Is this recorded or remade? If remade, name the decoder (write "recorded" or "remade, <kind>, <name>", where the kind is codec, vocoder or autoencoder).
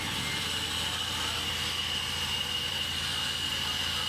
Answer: remade, vocoder, BigVGAN v2